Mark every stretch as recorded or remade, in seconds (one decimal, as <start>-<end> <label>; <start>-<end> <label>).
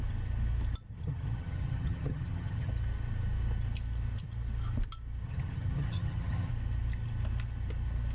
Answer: 0.0-0.9 recorded; 0.9-2.7 remade; 2.7-5.2 recorded; 5.2-6.5 remade; 6.5-8.1 recorded